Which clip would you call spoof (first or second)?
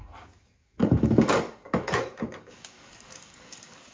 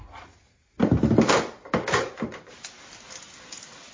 first